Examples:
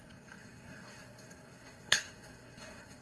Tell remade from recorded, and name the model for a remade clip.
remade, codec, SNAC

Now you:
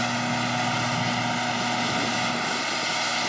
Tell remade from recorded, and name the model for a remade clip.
recorded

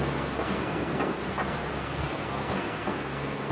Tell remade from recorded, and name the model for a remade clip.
remade, codec, SNAC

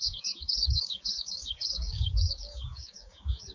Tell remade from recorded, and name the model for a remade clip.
remade, codec, DAC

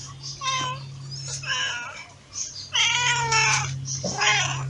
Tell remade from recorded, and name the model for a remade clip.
recorded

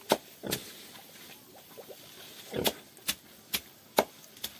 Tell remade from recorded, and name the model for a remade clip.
recorded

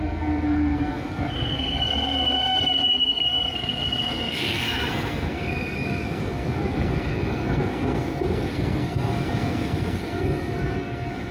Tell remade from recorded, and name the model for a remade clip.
remade, codec, SNAC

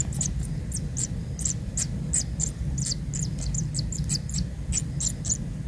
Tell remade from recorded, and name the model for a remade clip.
recorded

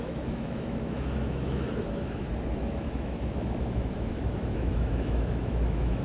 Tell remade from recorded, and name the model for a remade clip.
remade, autoencoder, DAC-VAE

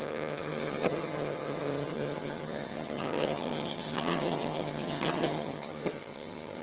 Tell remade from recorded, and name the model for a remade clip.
remade, vocoder, HiFi-GAN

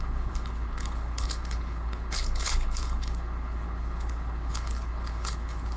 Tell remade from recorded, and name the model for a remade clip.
remade, codec, HILCodec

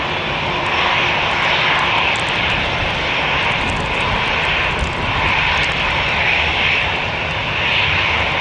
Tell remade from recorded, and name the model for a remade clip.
remade, vocoder, BigVGAN v2